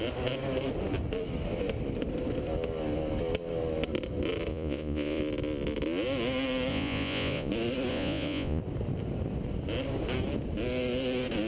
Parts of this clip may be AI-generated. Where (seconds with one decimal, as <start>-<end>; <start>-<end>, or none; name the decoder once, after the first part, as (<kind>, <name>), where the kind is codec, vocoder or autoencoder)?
4.5-5.2 (vocoder, Vocos); 6.7-7.5; 7.9-8.6